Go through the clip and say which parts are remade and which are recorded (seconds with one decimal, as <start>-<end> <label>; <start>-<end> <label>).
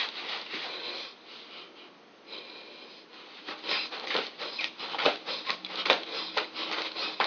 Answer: 0.0-7.3 recorded